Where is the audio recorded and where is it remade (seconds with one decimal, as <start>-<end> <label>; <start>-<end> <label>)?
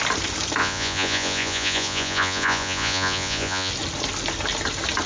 0.0-0.6 recorded; 0.6-3.7 remade; 3.7-5.1 recorded